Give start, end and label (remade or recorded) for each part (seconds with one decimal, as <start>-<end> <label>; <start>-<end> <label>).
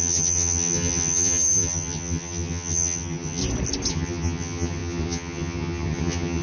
0.0-3.4 remade; 3.4-3.9 recorded; 3.9-6.4 remade